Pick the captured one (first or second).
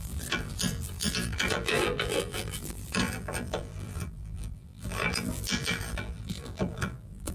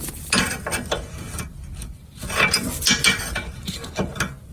second